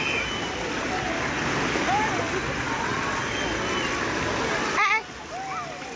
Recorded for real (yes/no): yes